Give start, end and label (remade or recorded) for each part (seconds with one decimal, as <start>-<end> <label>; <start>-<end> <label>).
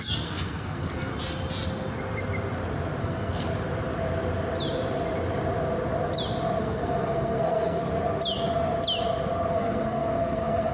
0.0-1.1 remade; 1.1-3.0 recorded; 3.0-3.5 remade; 3.5-6.6 recorded; 6.6-7.8 remade; 7.8-9.5 recorded; 9.5-10.7 remade